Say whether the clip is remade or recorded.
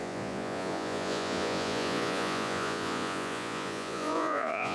remade